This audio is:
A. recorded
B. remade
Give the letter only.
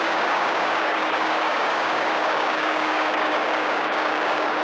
B